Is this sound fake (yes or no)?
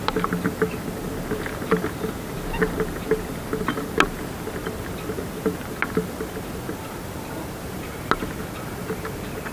no